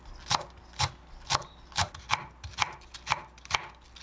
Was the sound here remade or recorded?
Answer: recorded